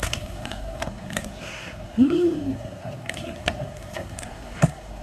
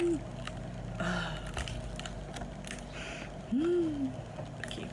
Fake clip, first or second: first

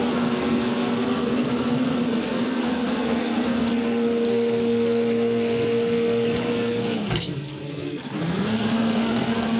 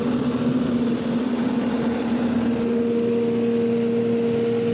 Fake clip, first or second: first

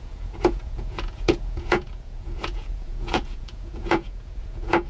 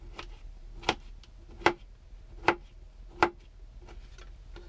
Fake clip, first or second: first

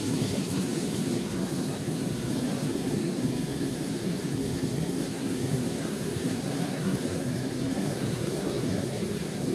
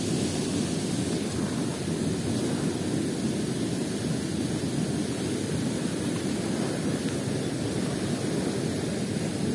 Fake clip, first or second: first